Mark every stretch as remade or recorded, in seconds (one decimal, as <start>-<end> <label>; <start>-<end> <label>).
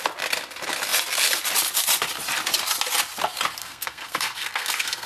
0.0-3.6 recorded; 3.6-5.1 remade